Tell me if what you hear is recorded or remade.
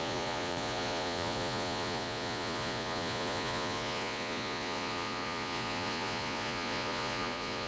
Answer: remade